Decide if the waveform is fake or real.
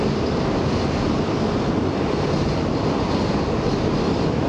real